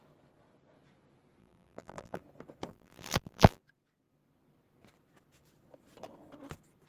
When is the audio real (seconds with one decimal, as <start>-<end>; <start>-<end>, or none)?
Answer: 0.0-1.4; 2.2-2.7; 3.6-6.9